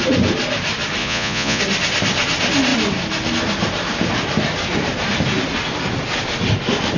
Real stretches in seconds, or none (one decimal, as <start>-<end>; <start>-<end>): 0.0-1.0; 1.6-7.0